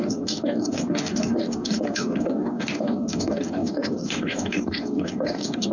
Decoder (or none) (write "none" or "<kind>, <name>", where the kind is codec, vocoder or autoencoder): codec, DAC